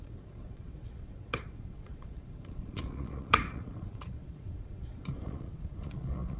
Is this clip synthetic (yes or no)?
yes